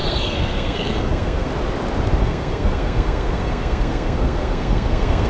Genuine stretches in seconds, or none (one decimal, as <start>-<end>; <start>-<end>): 1.5-2.2